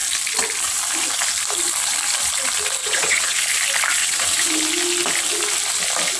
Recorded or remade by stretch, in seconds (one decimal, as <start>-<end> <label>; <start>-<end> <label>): 0.0-2.8 recorded; 2.8-3.4 remade; 3.4-4.0 recorded; 4.0-4.5 remade; 4.5-6.2 recorded